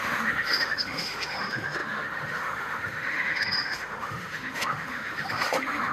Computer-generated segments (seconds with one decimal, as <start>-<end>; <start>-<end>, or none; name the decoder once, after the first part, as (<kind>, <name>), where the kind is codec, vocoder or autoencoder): 0.0-5.9 (autoencoder, DAC-VAE)